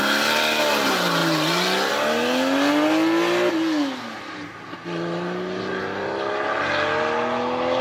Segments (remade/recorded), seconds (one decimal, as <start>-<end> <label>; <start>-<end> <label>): 0.0-7.8 recorded